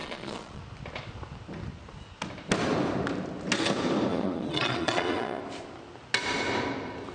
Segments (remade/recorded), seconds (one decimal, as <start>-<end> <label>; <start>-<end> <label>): 0.0-0.6 remade; 0.6-4.1 recorded; 4.1-5.4 remade; 5.4-7.1 recorded